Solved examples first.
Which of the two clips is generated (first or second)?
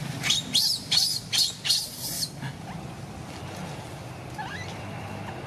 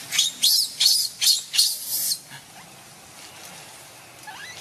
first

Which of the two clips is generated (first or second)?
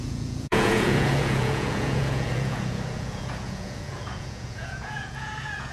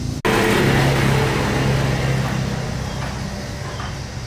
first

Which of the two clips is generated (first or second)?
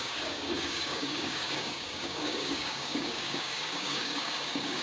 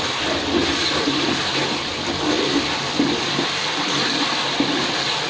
first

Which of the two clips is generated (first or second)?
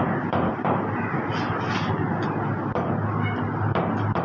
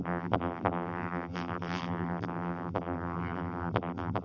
second